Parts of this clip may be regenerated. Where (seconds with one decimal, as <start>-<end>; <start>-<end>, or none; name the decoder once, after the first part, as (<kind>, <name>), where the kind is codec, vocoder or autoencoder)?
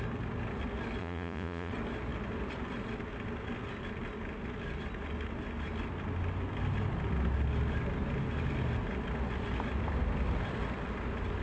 1.0-1.7 (vocoder, Vocos)